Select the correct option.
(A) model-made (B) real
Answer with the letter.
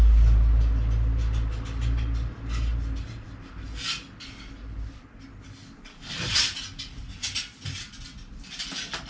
B